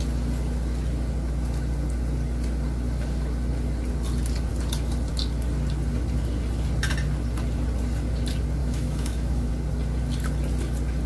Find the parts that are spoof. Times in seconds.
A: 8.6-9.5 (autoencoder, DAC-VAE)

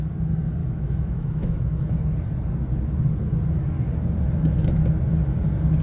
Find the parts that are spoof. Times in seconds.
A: 0.6-1.9 (autoencoder, DAC-VAE)

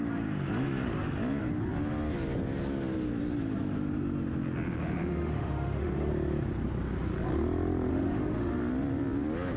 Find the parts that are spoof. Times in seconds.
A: 5.1-6.1 (autoencoder, DAC-VAE); 7.9-8.6

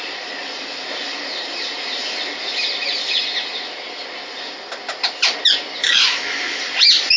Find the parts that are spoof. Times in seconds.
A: 5.8-6.6 (autoencoder, DAC-VAE)

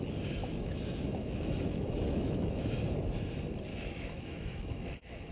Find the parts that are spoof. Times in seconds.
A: 0.4-2.7 (autoencoder, DAC-VAE); 3.7-5.3

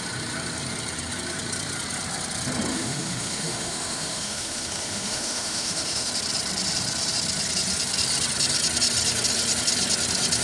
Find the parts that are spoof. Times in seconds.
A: 2.7-6.1 (autoencoder, DAC-VAE)